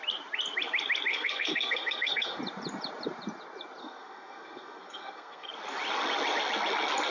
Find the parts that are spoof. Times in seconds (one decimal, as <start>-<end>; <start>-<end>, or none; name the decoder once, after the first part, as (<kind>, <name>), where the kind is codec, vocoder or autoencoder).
1.1-2.4 (codec, SNAC); 3.8-5.5